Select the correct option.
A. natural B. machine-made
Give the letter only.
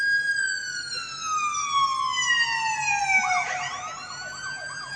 A